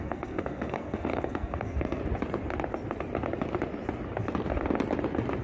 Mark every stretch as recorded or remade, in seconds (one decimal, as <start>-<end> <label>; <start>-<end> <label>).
0.0-2.0 remade; 2.0-5.4 recorded